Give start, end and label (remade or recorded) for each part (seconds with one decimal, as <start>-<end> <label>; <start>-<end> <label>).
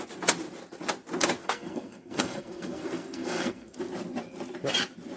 0.0-1.4 recorded; 1.4-3.8 remade; 3.8-5.2 recorded